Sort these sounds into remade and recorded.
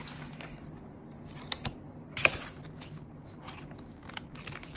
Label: recorded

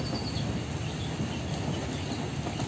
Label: recorded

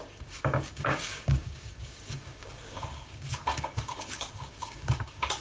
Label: remade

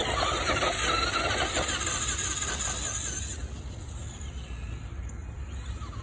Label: recorded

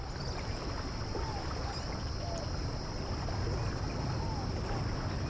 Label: recorded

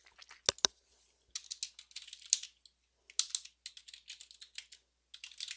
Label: recorded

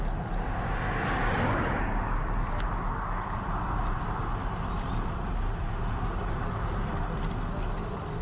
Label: recorded